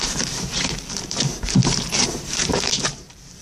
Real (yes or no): no